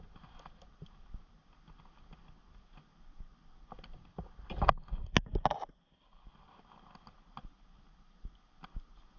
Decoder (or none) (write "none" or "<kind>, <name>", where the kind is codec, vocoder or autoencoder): none